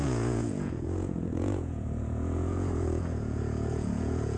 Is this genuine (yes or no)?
no